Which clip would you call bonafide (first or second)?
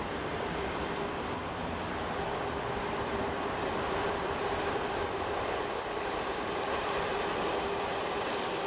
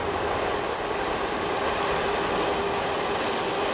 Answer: second